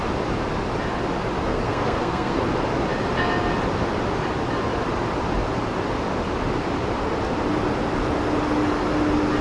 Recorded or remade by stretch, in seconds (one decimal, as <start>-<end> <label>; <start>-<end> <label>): 0.0-1.5 recorded; 1.5-2.4 remade; 2.4-9.4 recorded